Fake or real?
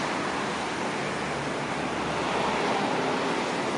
real